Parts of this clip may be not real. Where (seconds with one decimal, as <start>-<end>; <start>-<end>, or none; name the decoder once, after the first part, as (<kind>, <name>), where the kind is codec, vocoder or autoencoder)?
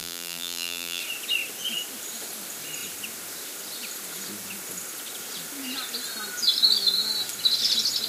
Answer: 0.0-1.0 (vocoder, BigVGAN v2)